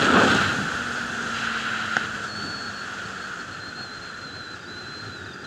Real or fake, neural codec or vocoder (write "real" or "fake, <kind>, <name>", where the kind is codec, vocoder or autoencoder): real